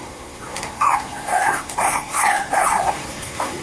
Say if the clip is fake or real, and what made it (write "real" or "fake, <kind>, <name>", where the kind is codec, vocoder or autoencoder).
fake, codec, SNAC